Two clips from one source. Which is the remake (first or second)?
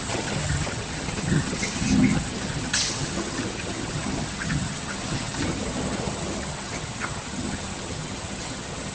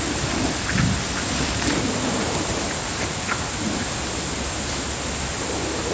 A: first